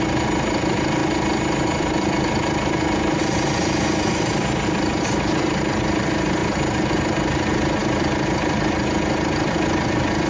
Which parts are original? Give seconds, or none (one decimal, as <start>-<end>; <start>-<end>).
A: 1.0-1.8